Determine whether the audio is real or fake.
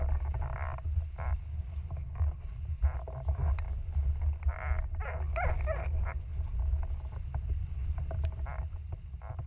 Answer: real